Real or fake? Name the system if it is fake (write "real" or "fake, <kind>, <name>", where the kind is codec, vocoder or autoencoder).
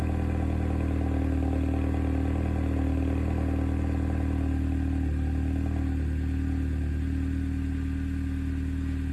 real